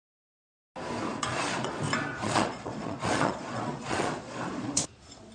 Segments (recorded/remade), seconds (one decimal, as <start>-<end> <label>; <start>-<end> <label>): 0.0-1.1 recorded; 1.1-1.7 remade; 1.7-2.1 recorded; 2.1-5.3 remade